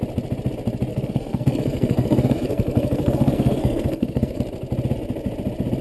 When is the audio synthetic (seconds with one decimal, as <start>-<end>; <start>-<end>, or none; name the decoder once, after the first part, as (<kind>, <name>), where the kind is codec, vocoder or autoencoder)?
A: 0.9-4.4 (codec, SNAC)